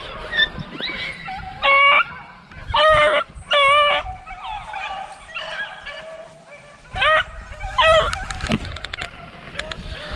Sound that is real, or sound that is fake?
real